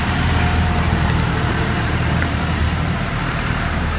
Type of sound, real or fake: fake